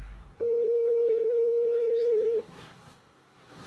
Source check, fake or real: fake